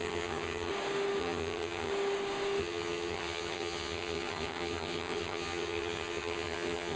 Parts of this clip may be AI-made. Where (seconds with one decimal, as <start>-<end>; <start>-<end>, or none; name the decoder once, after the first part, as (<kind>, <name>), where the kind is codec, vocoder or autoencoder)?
0.0-0.7 (vocoder, HiFi-GAN); 1.2-1.9; 2.6-7.0